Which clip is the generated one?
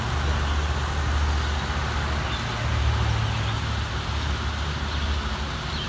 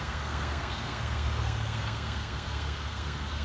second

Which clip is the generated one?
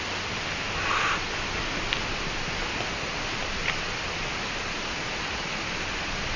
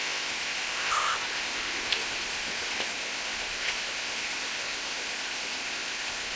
second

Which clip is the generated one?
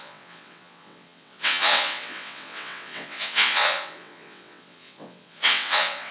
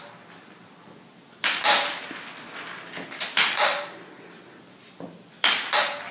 first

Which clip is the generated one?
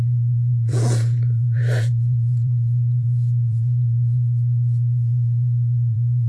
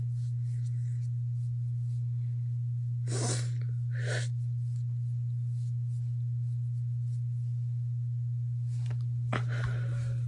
first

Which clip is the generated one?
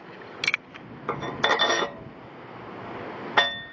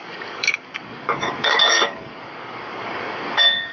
second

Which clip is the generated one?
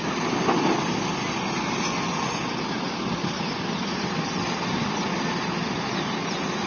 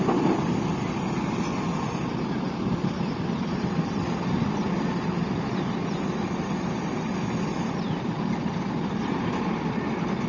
second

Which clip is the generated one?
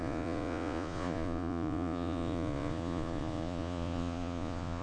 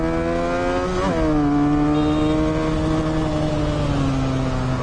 first